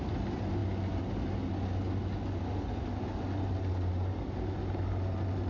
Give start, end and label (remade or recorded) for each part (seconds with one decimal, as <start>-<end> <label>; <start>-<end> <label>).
0.0-5.5 recorded